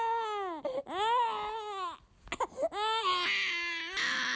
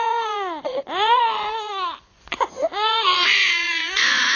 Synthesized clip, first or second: second